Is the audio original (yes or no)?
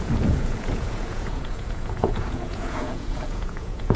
no